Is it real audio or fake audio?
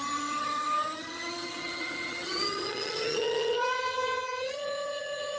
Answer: fake